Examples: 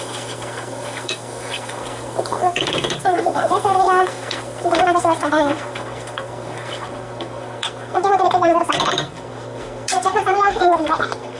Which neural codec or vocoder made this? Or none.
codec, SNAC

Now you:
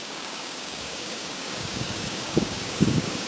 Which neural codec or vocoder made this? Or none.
codec, DAC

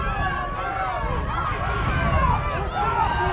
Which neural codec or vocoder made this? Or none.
none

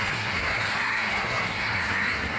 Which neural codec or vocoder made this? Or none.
codec, SNAC